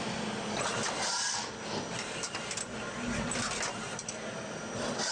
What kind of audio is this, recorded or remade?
recorded